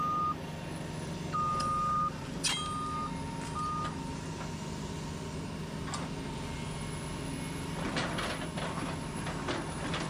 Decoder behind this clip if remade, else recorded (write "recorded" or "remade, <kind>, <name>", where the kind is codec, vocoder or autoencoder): recorded